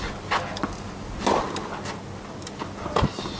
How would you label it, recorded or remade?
recorded